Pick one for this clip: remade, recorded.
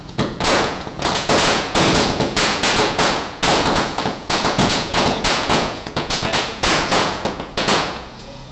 remade